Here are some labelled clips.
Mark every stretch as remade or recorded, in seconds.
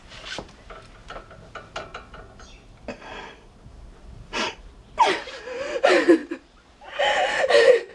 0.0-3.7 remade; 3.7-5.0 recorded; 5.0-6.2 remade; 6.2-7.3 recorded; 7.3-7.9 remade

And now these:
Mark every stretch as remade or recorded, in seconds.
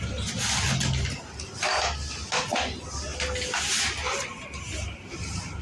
0.0-5.6 recorded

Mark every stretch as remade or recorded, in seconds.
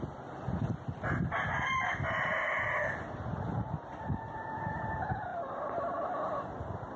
0.0-7.0 recorded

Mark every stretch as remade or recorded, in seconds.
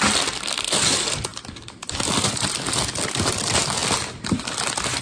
0.0-1.3 recorded; 1.3-2.8 remade; 2.8-5.0 recorded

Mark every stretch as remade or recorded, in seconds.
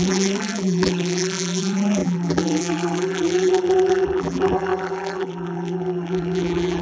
0.0-6.8 remade